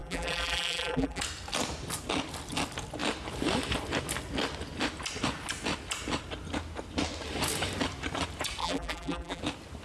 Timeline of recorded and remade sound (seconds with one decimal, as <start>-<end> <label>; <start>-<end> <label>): 0.0-1.2 remade; 1.2-8.6 recorded; 8.6-9.4 remade; 9.4-9.8 recorded